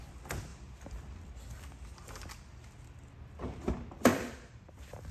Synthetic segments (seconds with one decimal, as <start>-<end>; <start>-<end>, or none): none